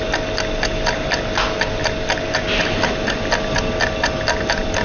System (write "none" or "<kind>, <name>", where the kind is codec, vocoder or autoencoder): none